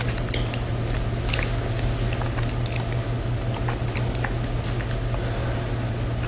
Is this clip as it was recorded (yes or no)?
yes